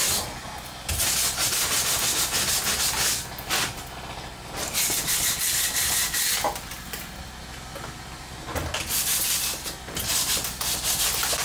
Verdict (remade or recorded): recorded